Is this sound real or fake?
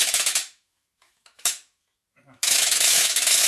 fake